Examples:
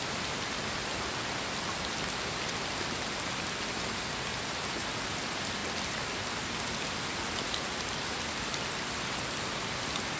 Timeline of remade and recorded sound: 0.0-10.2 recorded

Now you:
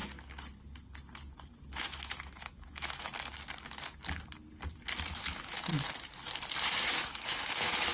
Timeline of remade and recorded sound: 0.0-1.7 recorded; 1.7-3.1 remade; 3.1-5.1 recorded; 5.1-5.7 remade; 5.7-6.8 recorded; 6.8-7.9 remade

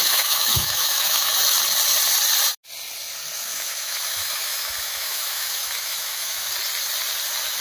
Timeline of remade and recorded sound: 0.0-1.3 remade; 1.3-3.5 recorded; 3.5-6.5 remade; 6.5-7.6 recorded

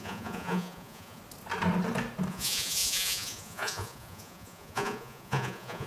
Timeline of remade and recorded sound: 0.0-1.2 remade; 1.2-2.3 recorded; 2.3-5.9 remade